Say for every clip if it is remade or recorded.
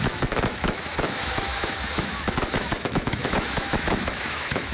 remade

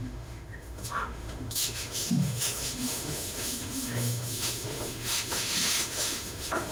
remade